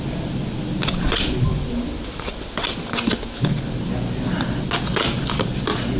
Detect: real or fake real